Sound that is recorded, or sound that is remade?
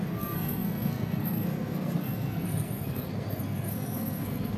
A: remade